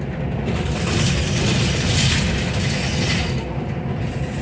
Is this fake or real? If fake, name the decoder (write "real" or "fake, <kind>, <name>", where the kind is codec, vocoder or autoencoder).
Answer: real